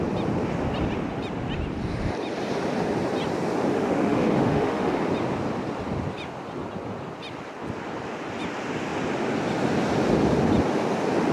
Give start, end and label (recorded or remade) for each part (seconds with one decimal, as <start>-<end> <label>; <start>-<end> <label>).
0.0-3.7 recorded; 3.7-5.0 remade; 5.0-11.3 recorded